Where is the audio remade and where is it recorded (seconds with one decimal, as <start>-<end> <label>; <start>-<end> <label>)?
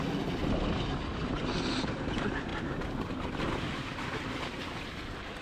0.0-5.4 recorded